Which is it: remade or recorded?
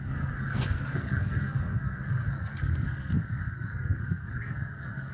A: remade